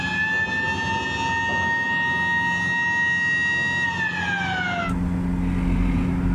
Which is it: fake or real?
real